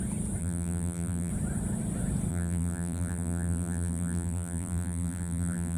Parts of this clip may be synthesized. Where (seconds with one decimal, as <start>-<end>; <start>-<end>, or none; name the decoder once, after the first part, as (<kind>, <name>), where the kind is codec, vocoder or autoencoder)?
0.4-1.3 (vocoder, BigVGAN v2); 2.3-5.8